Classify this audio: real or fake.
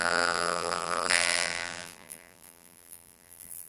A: fake